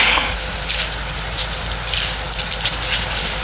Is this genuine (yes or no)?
yes